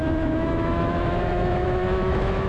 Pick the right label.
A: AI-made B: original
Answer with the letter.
A